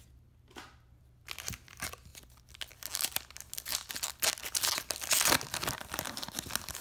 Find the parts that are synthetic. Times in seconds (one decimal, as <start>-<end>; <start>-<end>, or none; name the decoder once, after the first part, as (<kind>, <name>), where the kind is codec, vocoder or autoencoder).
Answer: none